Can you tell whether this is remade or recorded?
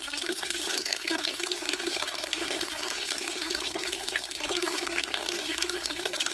remade